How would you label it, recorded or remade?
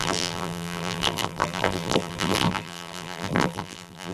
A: remade